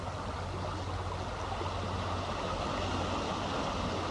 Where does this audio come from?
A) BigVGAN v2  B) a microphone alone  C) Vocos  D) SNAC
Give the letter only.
B